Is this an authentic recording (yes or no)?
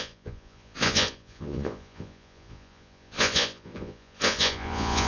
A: no